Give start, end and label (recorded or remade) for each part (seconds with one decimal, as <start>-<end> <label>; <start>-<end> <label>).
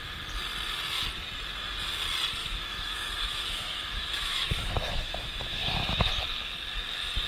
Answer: 0.0-2.4 recorded; 2.4-6.1 remade; 6.1-7.3 recorded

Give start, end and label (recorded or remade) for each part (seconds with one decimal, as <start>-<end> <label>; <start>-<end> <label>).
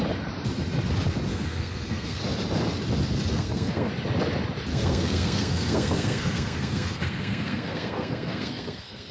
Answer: 0.0-1.3 recorded; 1.3-2.2 remade; 2.2-3.3 recorded; 3.3-3.9 remade; 3.9-4.7 recorded; 4.7-9.1 remade